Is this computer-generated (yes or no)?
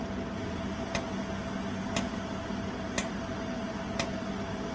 no